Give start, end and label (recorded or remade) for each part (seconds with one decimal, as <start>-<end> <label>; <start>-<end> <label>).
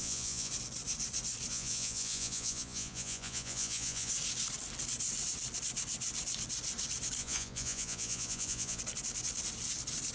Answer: 0.0-0.5 remade; 0.5-1.5 recorded; 1.5-4.1 remade; 4.1-7.2 recorded; 7.2-8.8 remade; 8.8-10.1 recorded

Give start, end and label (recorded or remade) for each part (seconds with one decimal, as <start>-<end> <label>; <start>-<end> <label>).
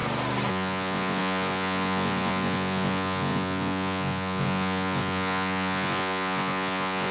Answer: 0.0-0.5 recorded; 0.5-7.1 remade